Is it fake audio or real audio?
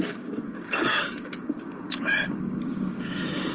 fake